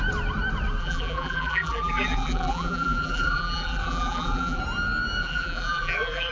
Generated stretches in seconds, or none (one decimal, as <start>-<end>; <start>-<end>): 0.8-4.6; 5.2-6.3